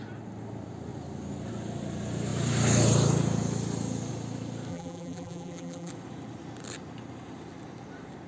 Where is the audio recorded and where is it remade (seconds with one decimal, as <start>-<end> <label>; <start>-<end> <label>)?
0.0-4.7 recorded; 4.7-5.9 remade; 5.9-8.3 recorded